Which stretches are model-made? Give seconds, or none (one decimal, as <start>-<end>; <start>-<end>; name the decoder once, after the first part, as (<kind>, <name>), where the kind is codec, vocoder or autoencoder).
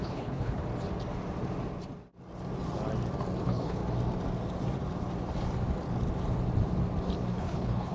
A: 0.0-0.6 (codec, HILCodec); 3.4-3.8; 7.3-7.9